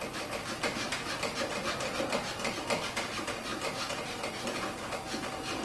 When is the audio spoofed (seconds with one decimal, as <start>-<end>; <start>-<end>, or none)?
none